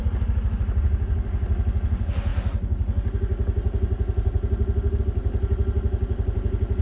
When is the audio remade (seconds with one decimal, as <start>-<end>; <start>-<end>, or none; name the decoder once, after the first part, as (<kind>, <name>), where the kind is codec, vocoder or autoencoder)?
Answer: none